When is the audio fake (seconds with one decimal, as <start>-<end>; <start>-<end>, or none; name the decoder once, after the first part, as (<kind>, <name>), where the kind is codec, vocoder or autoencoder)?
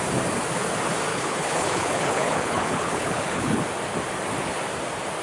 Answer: 1.1-3.6 (codec, HILCodec)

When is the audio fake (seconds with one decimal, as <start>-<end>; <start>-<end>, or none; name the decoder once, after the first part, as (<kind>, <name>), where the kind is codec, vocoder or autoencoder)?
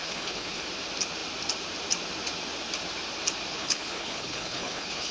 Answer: 0.0-0.6 (codec, HILCodec); 3.5-5.1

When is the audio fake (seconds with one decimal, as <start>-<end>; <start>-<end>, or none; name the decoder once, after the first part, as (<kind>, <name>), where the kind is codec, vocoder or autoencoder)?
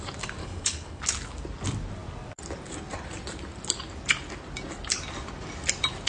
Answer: 0.4-1.0 (codec, HILCodec)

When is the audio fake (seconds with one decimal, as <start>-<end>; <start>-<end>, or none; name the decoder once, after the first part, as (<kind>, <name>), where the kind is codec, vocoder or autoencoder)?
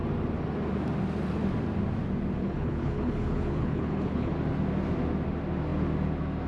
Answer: 2.4-4.3 (codec, HILCodec)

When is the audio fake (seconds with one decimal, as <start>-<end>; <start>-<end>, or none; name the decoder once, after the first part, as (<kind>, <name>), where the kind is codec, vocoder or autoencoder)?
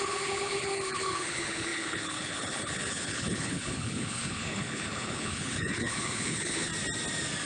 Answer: 0.0-6.7 (codec, HILCodec)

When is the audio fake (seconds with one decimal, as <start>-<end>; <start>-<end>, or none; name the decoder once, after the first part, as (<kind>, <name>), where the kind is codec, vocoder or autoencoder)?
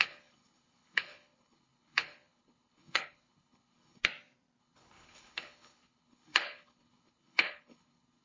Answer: 0.0-4.0 (codec, HILCodec); 4.6-8.2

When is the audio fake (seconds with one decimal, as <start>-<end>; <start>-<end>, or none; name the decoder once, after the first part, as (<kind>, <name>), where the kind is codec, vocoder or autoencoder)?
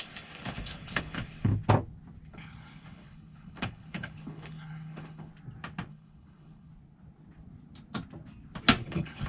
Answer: 0.0-1.5 (codec, HILCodec); 2.3-5.3; 5.9-6.7; 8.8-9.3